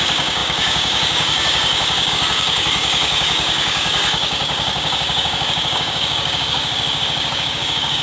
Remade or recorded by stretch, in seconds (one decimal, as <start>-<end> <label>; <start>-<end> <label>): 0.0-8.0 remade